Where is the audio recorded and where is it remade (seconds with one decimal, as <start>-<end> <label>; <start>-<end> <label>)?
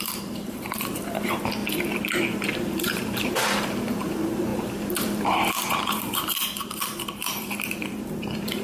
0.0-1.6 remade; 1.6-2.2 recorded; 2.2-8.6 remade